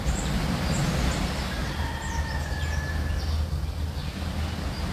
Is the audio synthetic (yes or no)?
no